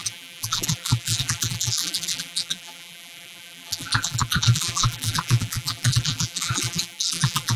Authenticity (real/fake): fake